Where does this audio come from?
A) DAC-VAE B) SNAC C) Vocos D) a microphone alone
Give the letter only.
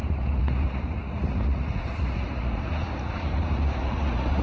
C